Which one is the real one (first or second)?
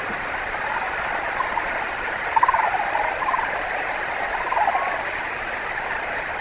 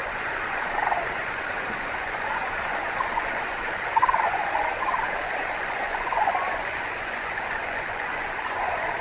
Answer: first